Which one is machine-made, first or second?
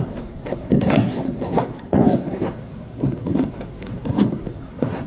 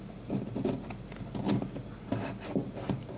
first